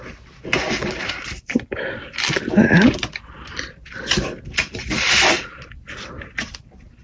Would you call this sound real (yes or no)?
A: yes